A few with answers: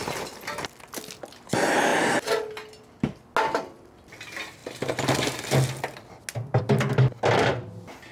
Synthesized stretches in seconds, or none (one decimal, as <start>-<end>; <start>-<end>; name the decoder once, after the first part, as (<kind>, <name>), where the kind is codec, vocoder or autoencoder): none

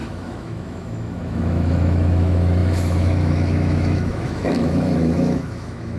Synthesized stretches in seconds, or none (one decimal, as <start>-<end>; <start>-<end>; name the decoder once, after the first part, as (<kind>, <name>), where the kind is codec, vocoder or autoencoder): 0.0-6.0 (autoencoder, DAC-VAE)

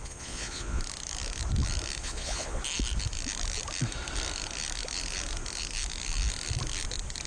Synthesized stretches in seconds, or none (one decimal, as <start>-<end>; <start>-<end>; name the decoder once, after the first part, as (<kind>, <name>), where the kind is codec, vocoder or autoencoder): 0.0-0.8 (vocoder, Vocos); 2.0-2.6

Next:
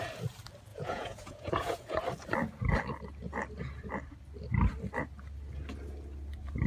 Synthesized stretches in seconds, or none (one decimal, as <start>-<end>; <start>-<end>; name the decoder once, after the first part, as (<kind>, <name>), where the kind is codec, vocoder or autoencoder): 0.7-2.0 (vocoder, Vocos)

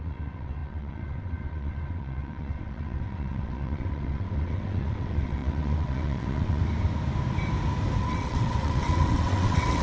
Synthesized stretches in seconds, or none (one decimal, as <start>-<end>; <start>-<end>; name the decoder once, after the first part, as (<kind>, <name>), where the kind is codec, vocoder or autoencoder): 0.0-6.6 (vocoder, WaveNeXt); 8.0-9.8

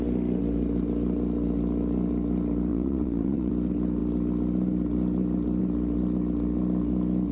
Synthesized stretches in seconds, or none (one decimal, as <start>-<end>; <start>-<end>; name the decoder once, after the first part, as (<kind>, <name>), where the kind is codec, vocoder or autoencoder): 2.7-3.5 (vocoder, Vocos)

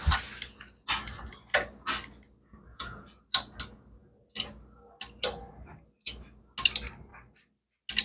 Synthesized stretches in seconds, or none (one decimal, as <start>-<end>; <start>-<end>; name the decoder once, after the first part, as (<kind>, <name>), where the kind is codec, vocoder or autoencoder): 2.7-3.2 (vocoder, Vocos)

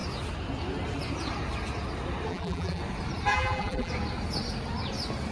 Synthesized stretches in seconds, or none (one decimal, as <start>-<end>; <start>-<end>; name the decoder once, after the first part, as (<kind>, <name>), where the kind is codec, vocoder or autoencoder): 2.3-2.8 (vocoder, BigVGAN v2); 3.3-3.9